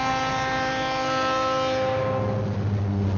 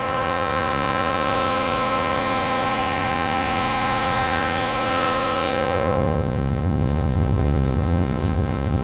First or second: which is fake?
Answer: second